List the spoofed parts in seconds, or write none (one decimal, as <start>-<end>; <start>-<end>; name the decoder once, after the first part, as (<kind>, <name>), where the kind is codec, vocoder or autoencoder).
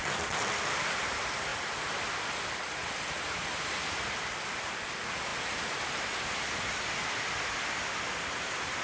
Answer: none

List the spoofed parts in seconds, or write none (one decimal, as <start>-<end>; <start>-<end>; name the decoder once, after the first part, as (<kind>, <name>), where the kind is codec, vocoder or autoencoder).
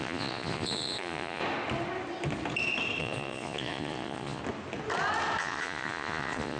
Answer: 0.0-1.4 (vocoder, Vocos); 3.0-4.4; 5.4-6.6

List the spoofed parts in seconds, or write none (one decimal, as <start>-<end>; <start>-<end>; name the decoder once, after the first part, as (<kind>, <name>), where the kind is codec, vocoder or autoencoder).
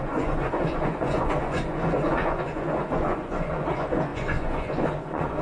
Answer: 0.0-5.4 (vocoder, Vocos)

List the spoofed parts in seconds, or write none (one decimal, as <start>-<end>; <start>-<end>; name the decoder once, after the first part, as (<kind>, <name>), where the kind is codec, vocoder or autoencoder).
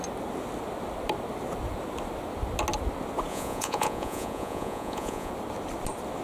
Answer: 3.3-5.3 (vocoder, Vocos)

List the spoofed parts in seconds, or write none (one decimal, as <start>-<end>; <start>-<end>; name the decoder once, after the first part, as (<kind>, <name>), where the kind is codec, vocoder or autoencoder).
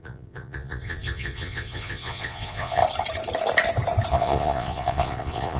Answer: 0.0-2.8 (vocoder, Vocos); 4.1-5.6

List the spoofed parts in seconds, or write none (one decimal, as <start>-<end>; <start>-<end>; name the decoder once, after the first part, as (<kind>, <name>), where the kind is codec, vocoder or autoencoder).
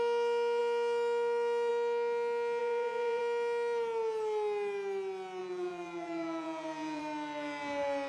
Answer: 2.6-3.2 (vocoder, Vocos); 5.4-7.0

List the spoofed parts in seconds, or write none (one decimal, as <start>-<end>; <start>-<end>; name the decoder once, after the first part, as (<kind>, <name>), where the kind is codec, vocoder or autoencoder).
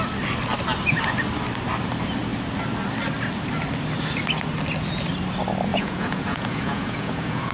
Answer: 5.7-7.5 (vocoder, Vocos)